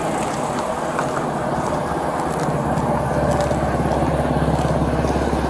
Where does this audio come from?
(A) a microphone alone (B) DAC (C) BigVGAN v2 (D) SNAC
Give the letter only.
A